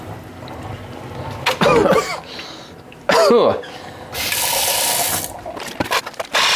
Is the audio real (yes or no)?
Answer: yes